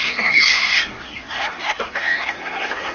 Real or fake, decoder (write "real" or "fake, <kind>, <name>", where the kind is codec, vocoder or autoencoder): fake, codec, SNAC